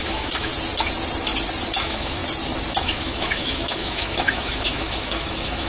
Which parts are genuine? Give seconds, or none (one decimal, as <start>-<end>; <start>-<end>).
0.5-1.8; 2.2-2.8